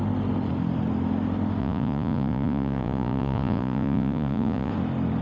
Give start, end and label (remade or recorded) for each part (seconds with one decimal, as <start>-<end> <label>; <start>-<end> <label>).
0.0-1.6 recorded; 1.6-4.7 remade; 4.7-5.2 recorded

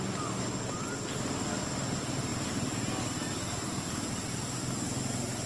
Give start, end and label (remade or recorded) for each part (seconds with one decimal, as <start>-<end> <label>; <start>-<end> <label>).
0.0-5.5 recorded

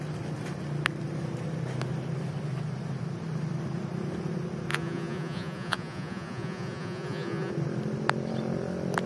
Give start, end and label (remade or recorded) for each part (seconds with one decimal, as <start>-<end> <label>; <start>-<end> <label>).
0.0-4.7 recorded; 4.7-7.5 remade; 7.5-9.1 recorded

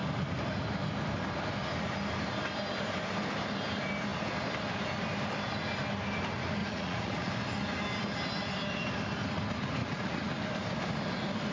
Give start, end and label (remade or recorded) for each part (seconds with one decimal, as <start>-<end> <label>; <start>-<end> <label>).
0.0-6.6 recorded; 6.6-7.3 remade; 7.3-9.8 recorded; 9.8-10.4 remade; 10.4-11.5 recorded

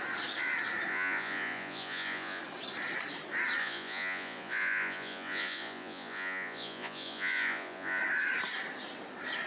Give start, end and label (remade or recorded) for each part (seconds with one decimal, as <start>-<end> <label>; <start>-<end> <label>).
0.0-0.9 recorded; 0.9-2.4 remade; 2.4-3.6 recorded; 3.6-8.0 remade; 8.0-9.5 recorded